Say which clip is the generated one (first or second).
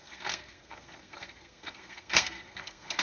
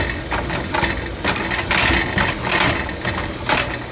first